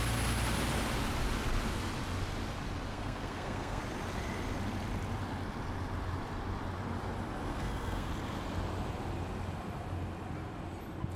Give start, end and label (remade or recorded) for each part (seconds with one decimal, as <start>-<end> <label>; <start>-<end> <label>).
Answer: 0.0-2.9 recorded; 2.9-3.8 remade; 3.8-7.5 recorded; 7.5-8.1 remade; 8.1-11.2 recorded